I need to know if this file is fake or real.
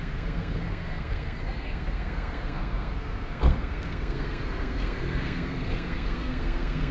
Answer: fake